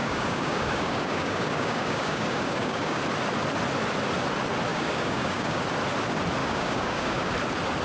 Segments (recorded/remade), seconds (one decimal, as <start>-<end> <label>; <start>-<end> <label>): 0.0-3.0 remade; 3.0-4.7 recorded; 4.7-5.6 remade; 5.6-6.4 recorded; 6.4-7.3 remade; 7.3-7.8 recorded